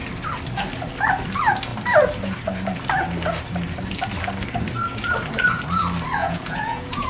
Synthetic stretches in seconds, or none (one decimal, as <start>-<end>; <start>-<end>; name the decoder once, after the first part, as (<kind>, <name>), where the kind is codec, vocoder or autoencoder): 6.2-7.1 (vocoder, Vocos)